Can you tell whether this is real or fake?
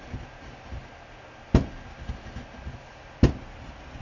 real